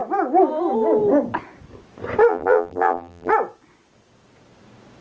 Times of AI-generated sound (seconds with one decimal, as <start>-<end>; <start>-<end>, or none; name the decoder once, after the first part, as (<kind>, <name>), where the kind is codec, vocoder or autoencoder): 2.3-3.3 (vocoder, BigVGAN v2)